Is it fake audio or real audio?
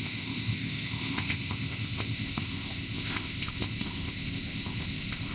fake